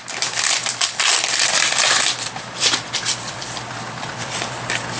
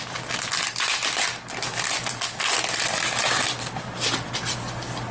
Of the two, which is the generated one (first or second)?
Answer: first